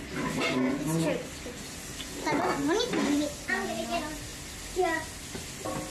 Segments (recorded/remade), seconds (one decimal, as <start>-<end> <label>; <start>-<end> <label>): 0.0-5.9 recorded